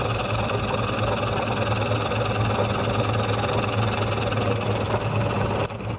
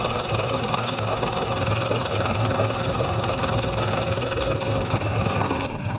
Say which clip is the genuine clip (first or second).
first